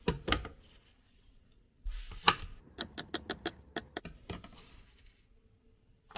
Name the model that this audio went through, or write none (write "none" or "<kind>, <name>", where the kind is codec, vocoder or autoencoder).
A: none